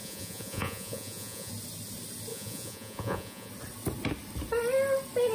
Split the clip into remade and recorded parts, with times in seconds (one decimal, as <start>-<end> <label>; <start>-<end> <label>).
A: 0.0-1.5 remade; 1.5-2.3 recorded; 2.3-3.5 remade; 3.5-5.3 recorded